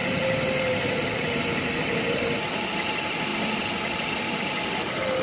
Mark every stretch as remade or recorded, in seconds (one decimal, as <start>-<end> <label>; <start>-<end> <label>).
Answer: 0.0-5.2 recorded

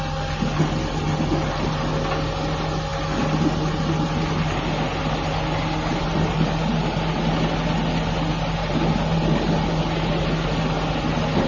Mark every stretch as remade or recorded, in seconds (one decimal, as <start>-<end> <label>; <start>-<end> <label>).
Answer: 0.0-11.5 recorded

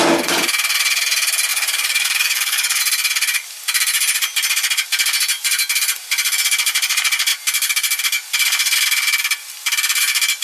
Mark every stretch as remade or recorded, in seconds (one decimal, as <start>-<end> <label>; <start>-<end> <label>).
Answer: 0.0-1.5 recorded; 1.5-2.8 remade; 2.8-10.4 recorded

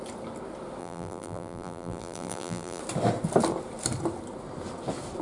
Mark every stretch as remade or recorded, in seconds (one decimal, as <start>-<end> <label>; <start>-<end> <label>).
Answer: 0.0-0.8 recorded; 0.8-2.8 remade; 2.8-5.2 recorded

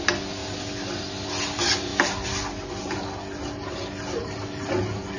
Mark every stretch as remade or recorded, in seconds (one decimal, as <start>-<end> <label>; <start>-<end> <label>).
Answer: 0.0-5.2 recorded

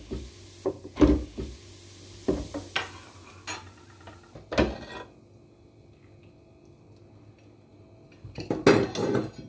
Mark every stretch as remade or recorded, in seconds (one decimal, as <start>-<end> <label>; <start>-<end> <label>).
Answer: 0.0-9.5 recorded